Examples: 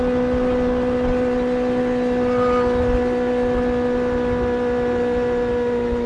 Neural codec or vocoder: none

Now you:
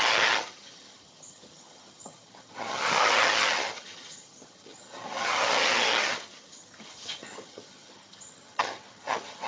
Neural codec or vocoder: vocoder, HiFi-GAN